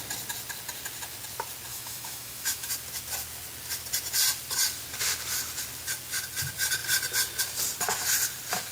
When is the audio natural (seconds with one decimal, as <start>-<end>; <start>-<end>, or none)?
0.0-1.7; 2.7-8.7